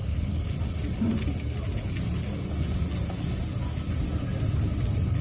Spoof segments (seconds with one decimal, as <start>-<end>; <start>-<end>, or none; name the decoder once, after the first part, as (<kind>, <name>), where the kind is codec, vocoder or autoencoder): none